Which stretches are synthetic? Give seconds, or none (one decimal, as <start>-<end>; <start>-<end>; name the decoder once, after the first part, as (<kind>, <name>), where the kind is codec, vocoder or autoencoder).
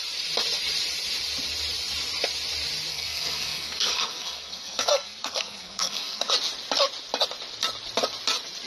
2.9-6.3 (codec, SNAC)